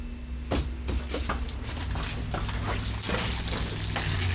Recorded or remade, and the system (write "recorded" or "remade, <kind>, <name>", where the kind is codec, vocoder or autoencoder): recorded